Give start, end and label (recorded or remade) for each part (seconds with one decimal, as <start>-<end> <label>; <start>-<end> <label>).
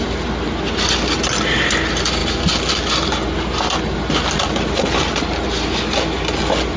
0.0-6.8 recorded